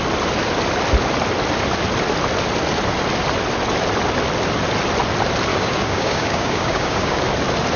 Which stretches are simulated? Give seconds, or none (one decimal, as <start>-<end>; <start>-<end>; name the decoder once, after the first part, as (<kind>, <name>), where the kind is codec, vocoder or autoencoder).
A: 5.5-7.2 (codec, DAC)

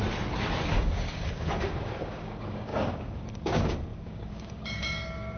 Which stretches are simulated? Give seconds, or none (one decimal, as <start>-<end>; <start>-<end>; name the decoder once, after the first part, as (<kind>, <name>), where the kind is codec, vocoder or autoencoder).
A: 0.7-5.4 (codec, DAC)